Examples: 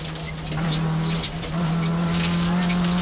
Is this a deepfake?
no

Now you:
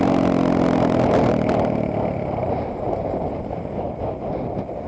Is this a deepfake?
no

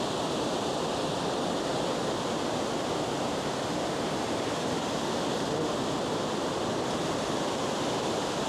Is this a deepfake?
yes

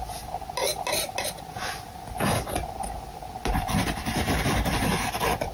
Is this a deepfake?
no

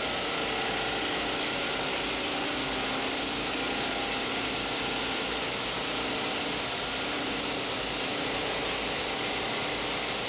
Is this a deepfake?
no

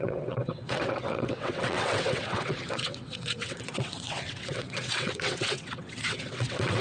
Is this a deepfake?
yes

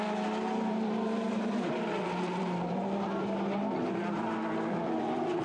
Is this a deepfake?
yes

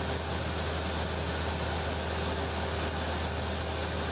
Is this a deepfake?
no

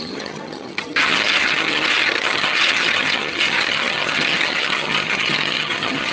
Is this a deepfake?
yes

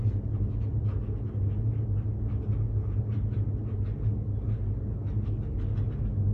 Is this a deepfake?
no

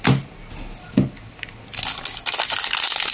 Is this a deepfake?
no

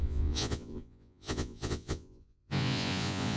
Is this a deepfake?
yes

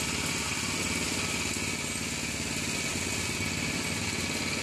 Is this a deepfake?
no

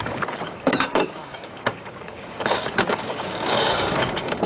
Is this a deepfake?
yes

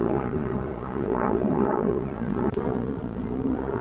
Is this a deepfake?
yes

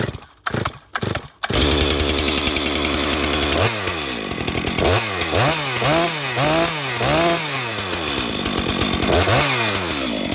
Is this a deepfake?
no